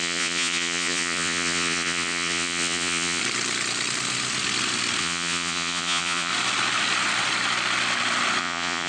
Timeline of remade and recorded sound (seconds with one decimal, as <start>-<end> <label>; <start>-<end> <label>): 0.0-3.2 remade; 3.2-5.0 recorded; 5.0-6.3 remade; 6.3-8.4 recorded; 8.4-8.9 remade